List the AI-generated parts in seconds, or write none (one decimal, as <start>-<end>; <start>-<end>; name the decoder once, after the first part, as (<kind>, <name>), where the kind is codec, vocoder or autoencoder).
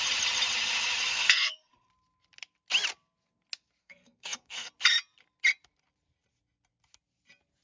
1.1-1.9 (codec, SNAC); 3.8-4.7